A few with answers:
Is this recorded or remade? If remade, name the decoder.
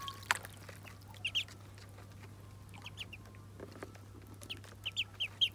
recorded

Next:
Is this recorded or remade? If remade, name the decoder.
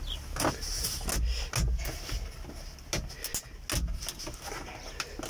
recorded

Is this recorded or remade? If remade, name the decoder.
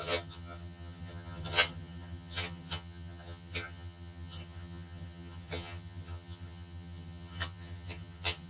remade, vocoder, HiFi-GAN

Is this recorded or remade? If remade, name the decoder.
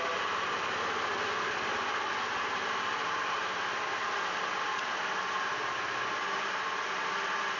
recorded